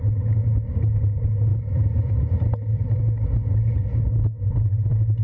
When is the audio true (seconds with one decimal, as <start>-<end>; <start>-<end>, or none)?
0.0-1.5; 3.0-5.2